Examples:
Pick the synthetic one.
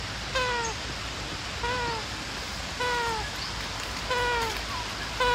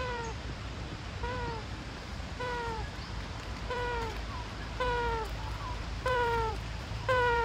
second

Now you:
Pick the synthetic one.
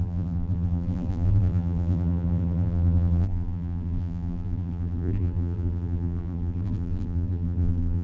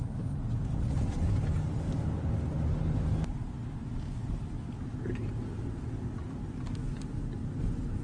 first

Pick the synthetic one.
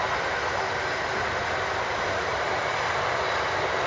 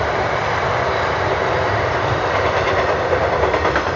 second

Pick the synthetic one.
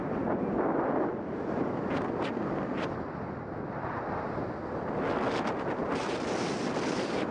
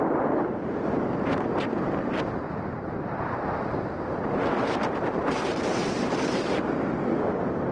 second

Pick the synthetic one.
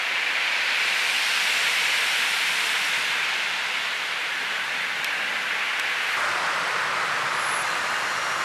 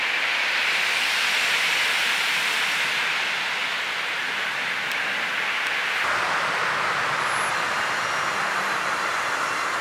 first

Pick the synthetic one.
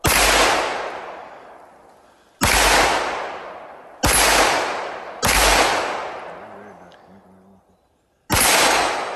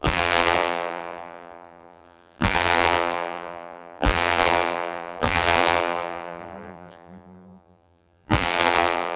second